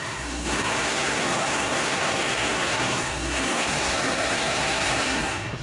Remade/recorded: remade